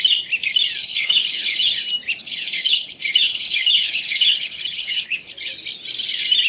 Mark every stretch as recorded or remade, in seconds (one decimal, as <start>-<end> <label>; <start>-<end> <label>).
0.0-0.8 recorded; 0.8-1.8 remade; 1.8-2.2 recorded; 2.2-5.5 remade; 5.5-6.5 recorded